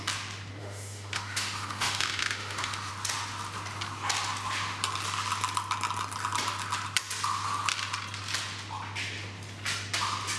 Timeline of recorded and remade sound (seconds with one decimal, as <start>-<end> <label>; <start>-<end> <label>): 0.0-0.6 recorded; 0.6-2.9 remade; 2.9-10.4 recorded